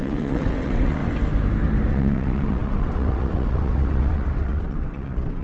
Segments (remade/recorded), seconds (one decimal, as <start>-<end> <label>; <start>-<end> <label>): 0.0-1.0 remade; 1.0-1.9 recorded; 1.9-5.4 remade